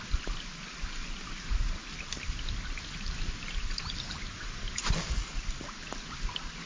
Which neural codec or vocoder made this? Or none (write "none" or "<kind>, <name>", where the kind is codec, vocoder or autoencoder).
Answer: none